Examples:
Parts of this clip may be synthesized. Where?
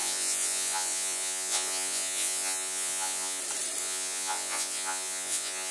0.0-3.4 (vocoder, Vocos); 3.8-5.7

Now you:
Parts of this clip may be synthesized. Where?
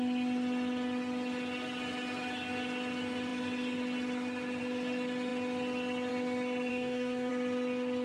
6.7-7.3 (autoencoder, DAC-VAE)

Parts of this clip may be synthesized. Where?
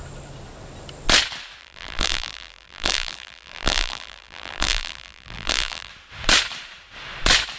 1.6-5.9 (vocoder, BigVGAN v2)